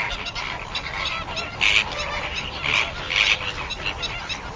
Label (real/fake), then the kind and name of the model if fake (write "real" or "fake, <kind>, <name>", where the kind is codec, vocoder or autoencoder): real